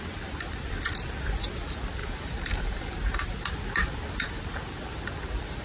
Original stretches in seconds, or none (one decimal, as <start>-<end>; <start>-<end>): 0.0-2.0; 2.8-5.6